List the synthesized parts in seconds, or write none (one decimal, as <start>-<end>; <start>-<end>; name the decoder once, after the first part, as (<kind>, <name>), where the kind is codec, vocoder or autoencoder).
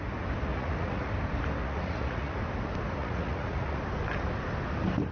0.5-1.1 (vocoder, Vocos); 1.6-2.3; 3.0-3.8